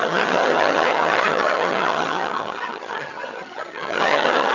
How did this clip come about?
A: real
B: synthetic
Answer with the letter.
B